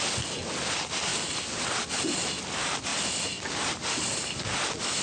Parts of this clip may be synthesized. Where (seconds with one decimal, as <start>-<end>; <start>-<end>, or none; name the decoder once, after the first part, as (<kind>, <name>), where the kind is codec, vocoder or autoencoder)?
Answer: 1.1-1.6 (vocoder, BigVGAN v2)